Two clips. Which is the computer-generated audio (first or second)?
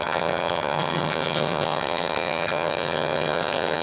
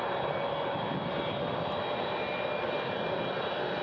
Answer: first